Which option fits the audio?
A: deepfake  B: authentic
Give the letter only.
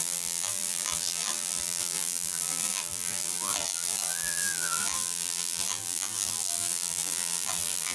A